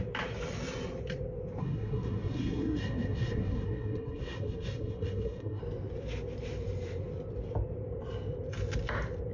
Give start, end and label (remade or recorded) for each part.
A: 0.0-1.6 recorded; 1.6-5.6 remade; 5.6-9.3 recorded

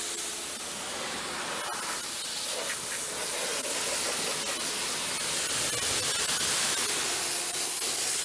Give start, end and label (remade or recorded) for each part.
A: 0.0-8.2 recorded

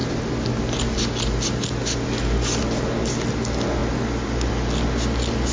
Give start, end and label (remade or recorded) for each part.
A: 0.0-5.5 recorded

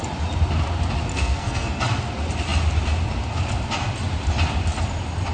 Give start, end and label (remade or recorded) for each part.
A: 0.0-1.1 recorded; 1.1-1.8 remade; 1.8-5.3 recorded

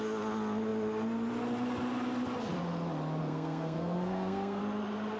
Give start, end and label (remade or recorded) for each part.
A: 0.0-3.2 recorded; 3.2-4.6 remade; 4.6-5.2 recorded

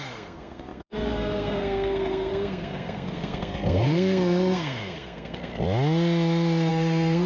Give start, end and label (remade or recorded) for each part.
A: 0.0-5.5 remade; 5.5-6.7 recorded; 6.7-7.3 remade

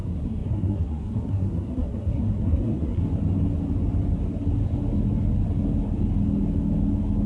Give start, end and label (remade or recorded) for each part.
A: 0.0-3.0 remade; 3.0-7.3 recorded

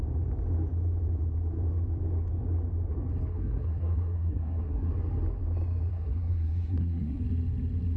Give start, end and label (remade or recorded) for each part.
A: 0.0-3.3 recorded; 3.3-4.9 remade; 4.9-5.9 recorded; 5.9-7.2 remade; 7.2-8.0 recorded